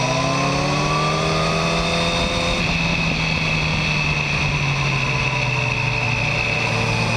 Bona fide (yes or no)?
yes